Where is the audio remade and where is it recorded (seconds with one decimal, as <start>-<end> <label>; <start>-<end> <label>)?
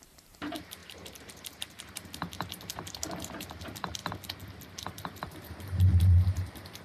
0.0-4.0 remade; 4.0-5.2 recorded; 5.2-6.8 remade